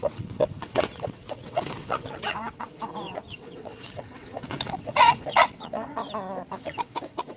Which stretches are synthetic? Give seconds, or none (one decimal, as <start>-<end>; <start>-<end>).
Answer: 0.0-6.0; 6.5-7.4